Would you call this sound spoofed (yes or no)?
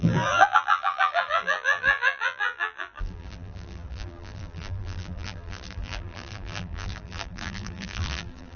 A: yes